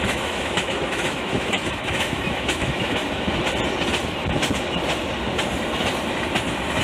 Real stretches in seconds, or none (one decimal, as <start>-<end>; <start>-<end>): 3.0-6.8

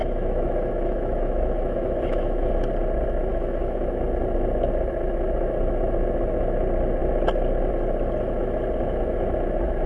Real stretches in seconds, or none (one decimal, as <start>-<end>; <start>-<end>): 2.5-3.3; 3.8-9.9

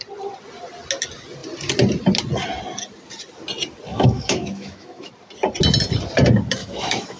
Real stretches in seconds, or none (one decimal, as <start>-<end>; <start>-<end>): 0.0-3.9; 5.1-6.6

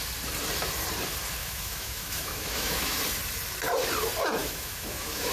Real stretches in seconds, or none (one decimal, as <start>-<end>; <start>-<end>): 0.0-1.4; 3.0-4.4

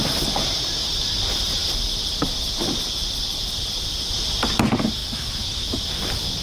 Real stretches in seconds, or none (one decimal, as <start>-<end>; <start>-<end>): 0.0-5.0; 5.8-6.4